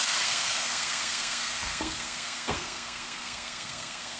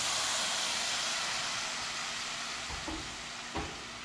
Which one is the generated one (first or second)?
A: first